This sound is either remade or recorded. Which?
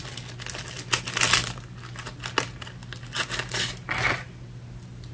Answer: recorded